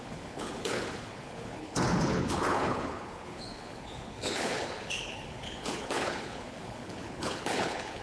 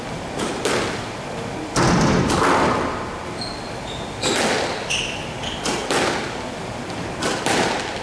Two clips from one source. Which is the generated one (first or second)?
first